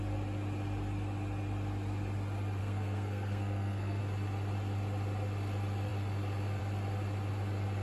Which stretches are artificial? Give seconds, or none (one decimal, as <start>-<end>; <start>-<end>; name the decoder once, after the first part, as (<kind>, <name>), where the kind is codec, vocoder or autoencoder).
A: 2.6-4.0 (codec, SNAC)